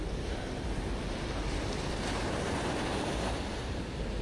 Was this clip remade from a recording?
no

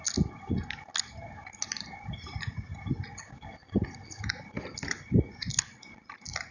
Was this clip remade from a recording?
no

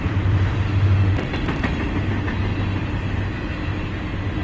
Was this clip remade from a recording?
no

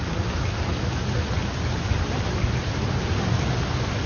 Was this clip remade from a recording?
no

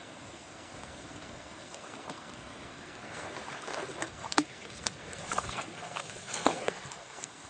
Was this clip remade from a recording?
yes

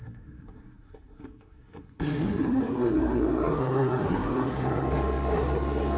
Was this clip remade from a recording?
yes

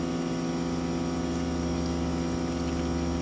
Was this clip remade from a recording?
no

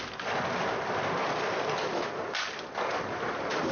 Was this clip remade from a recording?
no